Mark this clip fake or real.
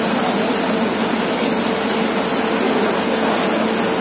real